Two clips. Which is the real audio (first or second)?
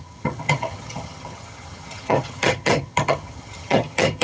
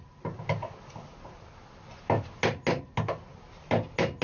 second